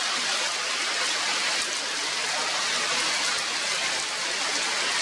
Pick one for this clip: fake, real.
real